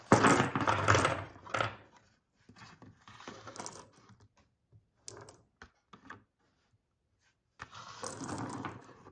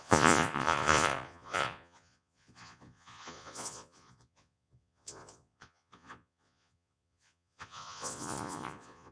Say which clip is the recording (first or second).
first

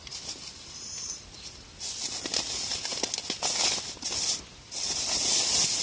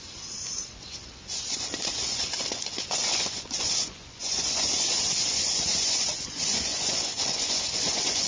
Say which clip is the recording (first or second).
first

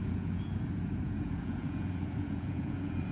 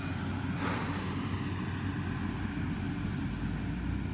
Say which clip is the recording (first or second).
second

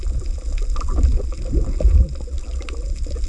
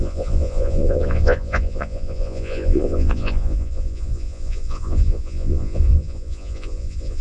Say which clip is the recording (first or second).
first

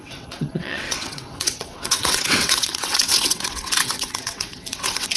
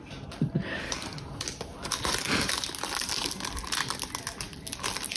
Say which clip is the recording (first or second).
second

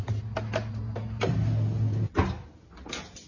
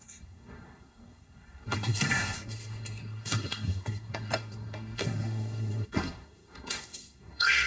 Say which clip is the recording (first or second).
first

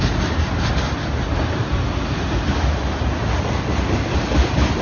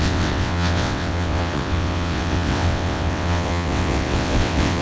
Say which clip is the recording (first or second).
first